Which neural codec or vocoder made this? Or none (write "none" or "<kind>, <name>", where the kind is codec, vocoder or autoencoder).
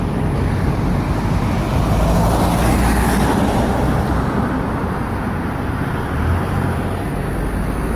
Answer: none